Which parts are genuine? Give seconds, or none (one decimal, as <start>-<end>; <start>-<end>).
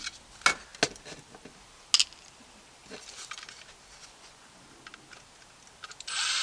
0.0-4.0; 4.5-6.4